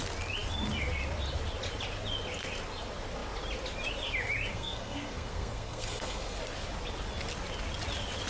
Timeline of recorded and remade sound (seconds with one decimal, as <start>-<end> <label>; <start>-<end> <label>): 0.0-4.5 recorded; 4.5-6.4 remade; 6.4-8.3 recorded